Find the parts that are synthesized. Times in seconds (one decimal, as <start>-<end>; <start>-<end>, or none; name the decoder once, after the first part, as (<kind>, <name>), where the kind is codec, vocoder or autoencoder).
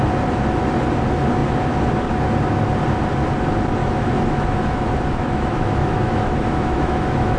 3.8-7.4 (autoencoder, DAC-VAE)